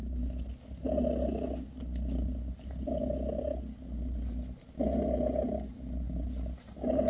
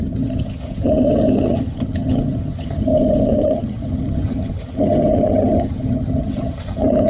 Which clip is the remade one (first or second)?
second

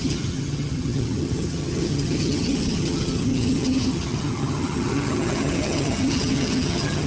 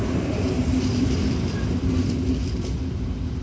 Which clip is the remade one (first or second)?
first